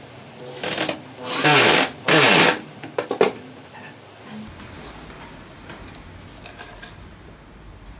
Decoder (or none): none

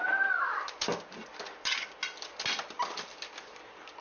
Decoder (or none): none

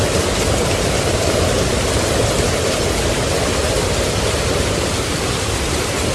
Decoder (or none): none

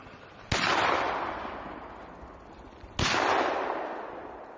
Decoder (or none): none